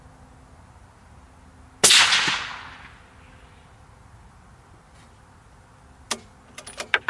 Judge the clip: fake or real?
real